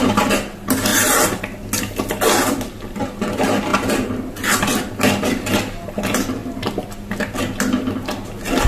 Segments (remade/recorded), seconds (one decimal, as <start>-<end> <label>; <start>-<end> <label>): 0.0-8.7 recorded